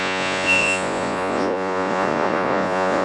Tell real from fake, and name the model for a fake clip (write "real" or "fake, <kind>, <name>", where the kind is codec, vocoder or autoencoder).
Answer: fake, vocoder, Vocos